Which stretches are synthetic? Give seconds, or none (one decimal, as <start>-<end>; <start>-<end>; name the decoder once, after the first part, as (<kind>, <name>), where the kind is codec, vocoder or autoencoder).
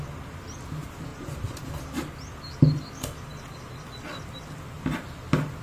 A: 1.1-1.6 (vocoder, BigVGAN v2)